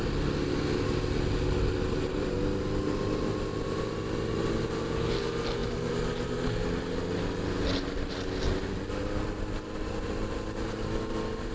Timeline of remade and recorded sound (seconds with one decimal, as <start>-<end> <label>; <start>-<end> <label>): 0.0-11.5 recorded